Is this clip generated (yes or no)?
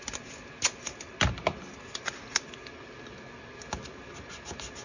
no